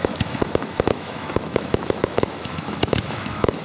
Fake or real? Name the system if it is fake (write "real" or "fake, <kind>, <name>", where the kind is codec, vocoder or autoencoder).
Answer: fake, autoencoder, DAC-VAE